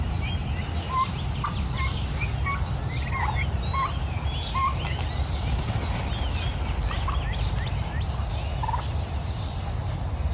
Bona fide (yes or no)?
yes